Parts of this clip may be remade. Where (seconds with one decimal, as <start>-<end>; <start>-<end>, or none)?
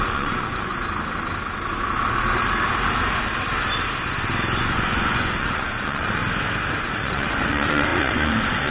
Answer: 0.0-0.7; 4.6-6.2; 6.8-8.7